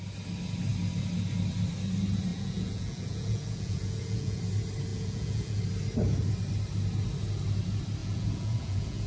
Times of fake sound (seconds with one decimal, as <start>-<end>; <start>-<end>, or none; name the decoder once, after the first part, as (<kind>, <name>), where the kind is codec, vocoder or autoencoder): 2.3-4.4 (vocoder, Vocos); 4.9-5.6; 8.0-9.1